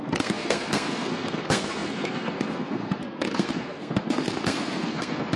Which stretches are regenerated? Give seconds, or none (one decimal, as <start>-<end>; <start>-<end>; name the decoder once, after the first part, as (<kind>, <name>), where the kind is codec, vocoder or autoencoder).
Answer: 0.0-5.4 (codec, SNAC)